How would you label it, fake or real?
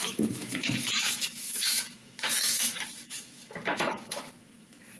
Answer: fake